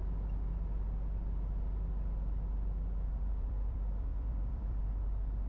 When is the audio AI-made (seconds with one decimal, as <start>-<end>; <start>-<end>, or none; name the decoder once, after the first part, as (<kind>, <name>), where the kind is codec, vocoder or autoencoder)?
3.3-5.5 (vocoder, BigVGAN v2)